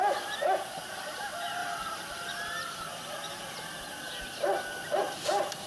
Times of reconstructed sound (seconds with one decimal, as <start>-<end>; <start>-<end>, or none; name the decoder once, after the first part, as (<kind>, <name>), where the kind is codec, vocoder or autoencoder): 0.0-1.6 (vocoder, BigVGAN v2); 5.0-5.7